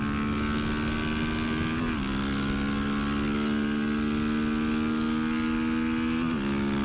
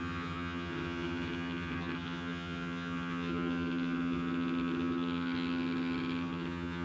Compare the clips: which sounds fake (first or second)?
second